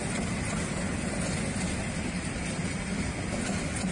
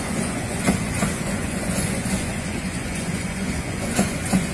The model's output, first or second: second